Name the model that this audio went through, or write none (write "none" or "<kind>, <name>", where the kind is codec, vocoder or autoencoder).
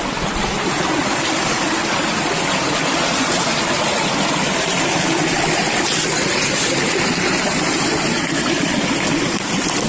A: none